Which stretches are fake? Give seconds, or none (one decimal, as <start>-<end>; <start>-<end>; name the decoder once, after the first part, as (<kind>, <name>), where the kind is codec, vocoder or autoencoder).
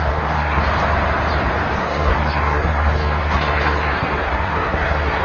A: 0.0-0.6 (codec, SNAC); 1.8-5.2